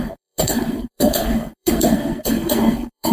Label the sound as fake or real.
fake